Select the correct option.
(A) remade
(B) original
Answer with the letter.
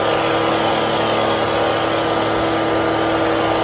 B